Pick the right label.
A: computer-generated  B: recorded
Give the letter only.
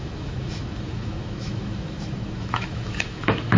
A